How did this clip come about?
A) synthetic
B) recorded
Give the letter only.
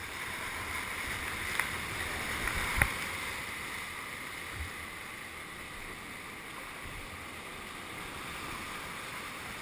B